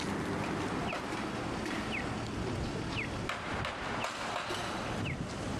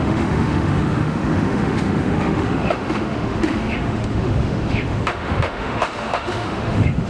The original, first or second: first